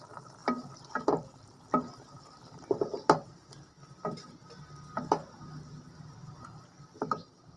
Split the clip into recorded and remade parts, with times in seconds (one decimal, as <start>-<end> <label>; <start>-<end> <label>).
0.0-7.6 recorded

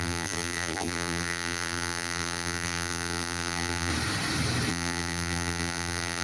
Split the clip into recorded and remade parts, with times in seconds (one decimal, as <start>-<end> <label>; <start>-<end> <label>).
0.0-3.9 remade; 3.9-4.7 recorded; 4.7-6.2 remade

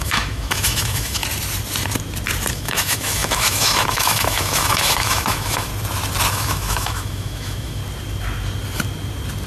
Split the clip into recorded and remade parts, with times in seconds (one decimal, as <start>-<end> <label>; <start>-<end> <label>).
0.0-1.2 remade; 1.2-2.5 recorded; 2.5-5.7 remade; 5.7-6.3 recorded; 6.3-7.8 remade; 7.8-9.5 recorded

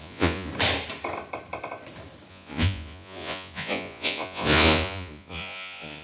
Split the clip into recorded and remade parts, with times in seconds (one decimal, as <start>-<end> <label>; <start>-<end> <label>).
0.0-0.5 remade; 0.5-2.3 recorded; 2.3-6.0 remade